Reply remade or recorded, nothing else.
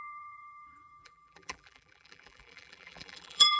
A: remade